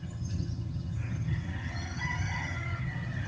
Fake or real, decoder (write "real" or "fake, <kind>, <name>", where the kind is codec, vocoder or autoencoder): fake, vocoder, HiFi-GAN